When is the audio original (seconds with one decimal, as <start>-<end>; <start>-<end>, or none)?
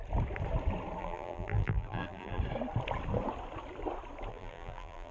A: 0.0-1.0; 2.4-4.3